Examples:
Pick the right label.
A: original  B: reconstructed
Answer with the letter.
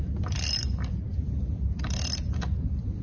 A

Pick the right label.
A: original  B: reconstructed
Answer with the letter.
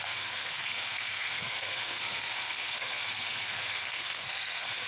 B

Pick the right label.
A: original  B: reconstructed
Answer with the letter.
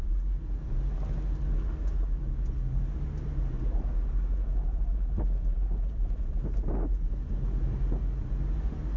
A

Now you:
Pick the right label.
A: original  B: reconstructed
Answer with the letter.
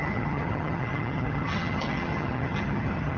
B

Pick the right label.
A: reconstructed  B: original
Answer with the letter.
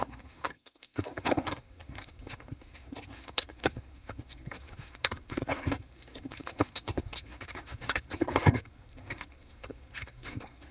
A